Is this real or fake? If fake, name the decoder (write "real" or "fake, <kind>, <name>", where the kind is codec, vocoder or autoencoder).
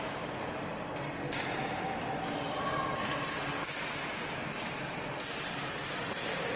real